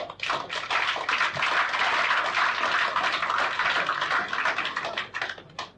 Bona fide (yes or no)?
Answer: yes